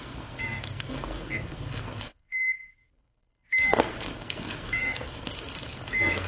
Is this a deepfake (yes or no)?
yes